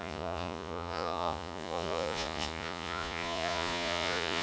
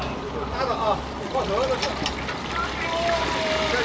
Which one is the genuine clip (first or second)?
second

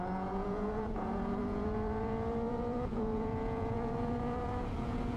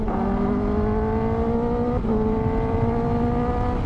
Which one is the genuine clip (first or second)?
second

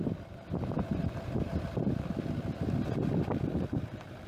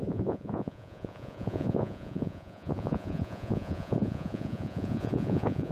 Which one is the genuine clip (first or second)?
first